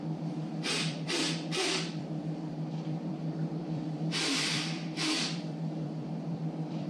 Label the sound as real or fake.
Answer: fake